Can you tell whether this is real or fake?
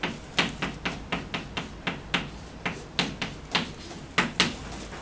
real